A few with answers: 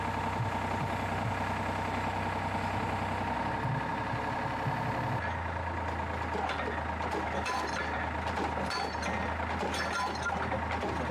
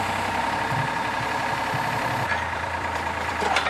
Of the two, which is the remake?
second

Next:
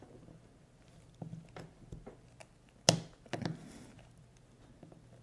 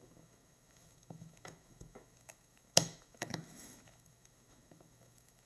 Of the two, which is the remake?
second